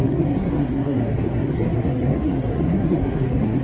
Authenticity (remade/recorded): remade